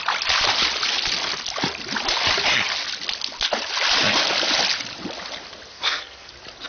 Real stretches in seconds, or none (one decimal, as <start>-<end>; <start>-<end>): 0.0-5.7; 6.3-6.7